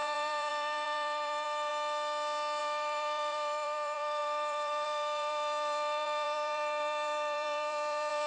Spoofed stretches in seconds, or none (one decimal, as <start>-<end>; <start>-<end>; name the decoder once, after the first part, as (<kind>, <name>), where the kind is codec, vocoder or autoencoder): 0.0-1.7 (vocoder, BigVGAN v2); 2.6-8.3